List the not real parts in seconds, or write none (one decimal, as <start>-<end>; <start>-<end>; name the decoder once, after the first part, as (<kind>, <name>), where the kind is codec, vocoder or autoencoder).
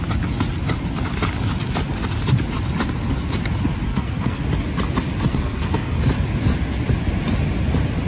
3.9-4.4 (codec, SNAC); 5.3-6.0